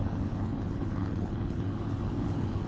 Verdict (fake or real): fake